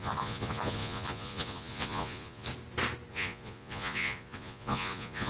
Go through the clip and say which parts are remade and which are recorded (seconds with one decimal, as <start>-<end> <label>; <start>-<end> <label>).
0.0-2.5 remade; 2.5-3.1 recorded; 3.1-5.3 remade